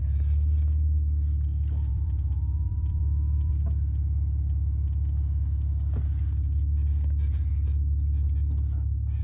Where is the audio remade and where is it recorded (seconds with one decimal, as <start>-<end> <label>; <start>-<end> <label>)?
0.0-1.9 recorded; 1.9-3.5 remade; 3.5-9.2 recorded